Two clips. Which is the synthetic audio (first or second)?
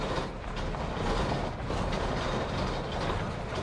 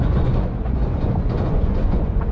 second